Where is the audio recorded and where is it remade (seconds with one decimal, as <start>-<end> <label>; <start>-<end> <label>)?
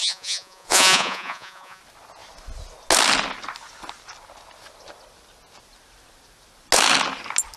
0.0-1.8 remade; 1.8-7.6 recorded